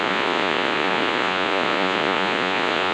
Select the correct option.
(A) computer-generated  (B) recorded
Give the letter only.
A